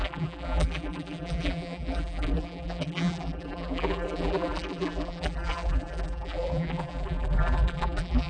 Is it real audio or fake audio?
fake